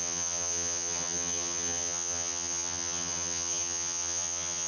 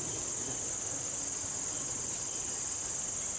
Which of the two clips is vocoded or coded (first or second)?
first